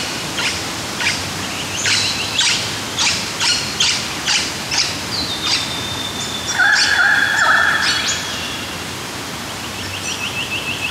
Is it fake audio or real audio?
real